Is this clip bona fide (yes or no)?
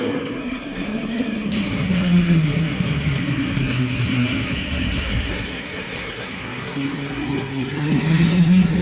no